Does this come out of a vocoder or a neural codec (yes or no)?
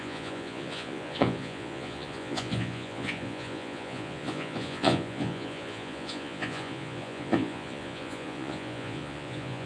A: yes